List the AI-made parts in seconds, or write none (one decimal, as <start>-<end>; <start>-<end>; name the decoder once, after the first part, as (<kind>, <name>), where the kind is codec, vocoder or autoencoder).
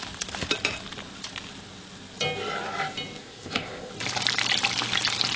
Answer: 3.2-3.9 (codec, ZipCodec)